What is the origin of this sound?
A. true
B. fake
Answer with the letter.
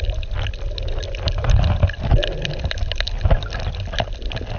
A